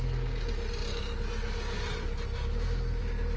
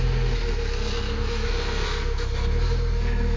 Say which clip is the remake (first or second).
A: second